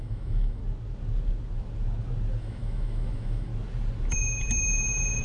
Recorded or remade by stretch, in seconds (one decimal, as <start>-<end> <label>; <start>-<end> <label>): 0.0-0.6 remade; 0.6-2.4 recorded; 2.4-3.5 remade; 3.5-5.2 recorded